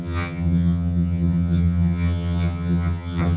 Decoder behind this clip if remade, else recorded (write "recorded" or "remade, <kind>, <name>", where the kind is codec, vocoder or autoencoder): remade, vocoder, HiFi-GAN